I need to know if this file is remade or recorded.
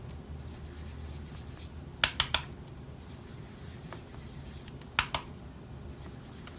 recorded